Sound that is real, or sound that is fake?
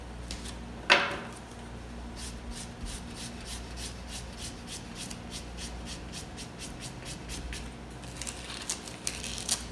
real